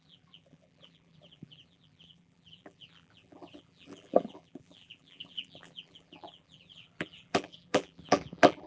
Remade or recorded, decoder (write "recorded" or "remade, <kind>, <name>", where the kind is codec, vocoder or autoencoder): remade, vocoder, BigVGAN v2